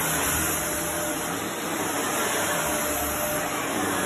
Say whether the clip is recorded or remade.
recorded